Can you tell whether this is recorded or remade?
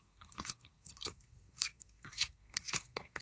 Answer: remade